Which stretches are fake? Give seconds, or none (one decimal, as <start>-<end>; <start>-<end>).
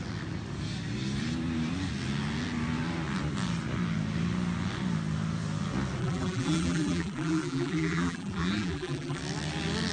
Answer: 6.0-9.2